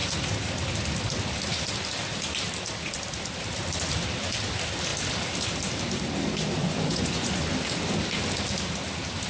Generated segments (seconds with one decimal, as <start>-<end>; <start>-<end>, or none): 6.6-7.3